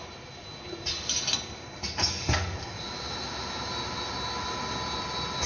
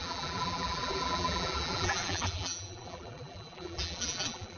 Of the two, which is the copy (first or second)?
second